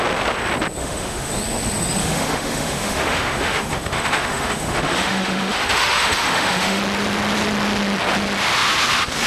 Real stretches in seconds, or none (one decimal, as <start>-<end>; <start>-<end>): 0.0-0.8; 1.3-2.0; 6.8-9.3